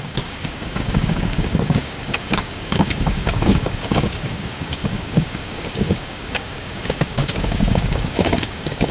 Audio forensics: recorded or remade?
remade